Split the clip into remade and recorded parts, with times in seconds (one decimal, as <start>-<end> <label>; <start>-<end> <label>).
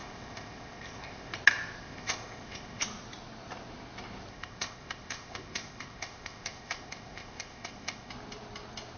0.0-1.3 remade; 1.3-1.8 recorded; 1.8-2.8 remade; 2.8-4.3 recorded; 4.3-8.1 remade; 8.1-9.0 recorded